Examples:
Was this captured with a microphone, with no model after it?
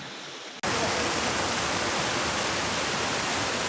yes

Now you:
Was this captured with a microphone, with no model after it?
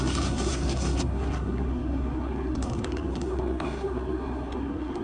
no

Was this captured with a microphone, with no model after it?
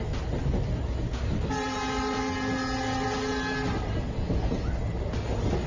yes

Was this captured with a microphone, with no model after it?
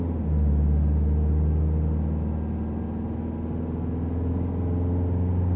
yes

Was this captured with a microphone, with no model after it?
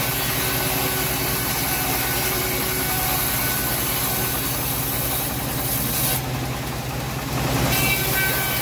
yes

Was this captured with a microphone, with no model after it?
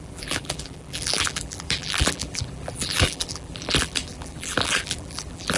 no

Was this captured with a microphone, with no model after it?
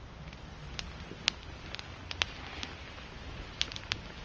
yes